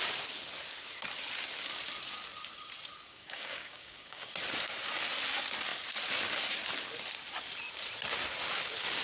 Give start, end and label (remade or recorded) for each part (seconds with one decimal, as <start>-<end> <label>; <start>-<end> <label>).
0.0-3.1 recorded; 3.1-4.3 remade; 4.3-9.0 recorded